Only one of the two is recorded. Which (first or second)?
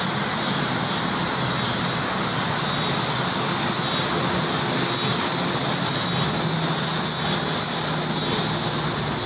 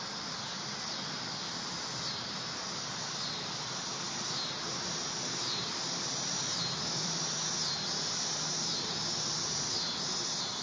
first